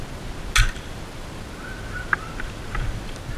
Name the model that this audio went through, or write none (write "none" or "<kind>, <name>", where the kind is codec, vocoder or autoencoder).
none